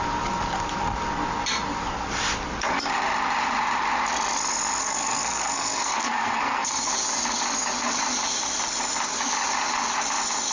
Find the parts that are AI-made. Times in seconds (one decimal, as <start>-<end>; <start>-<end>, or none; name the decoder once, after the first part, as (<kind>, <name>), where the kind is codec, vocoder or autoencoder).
4.8-6.9 (codec, SNAC)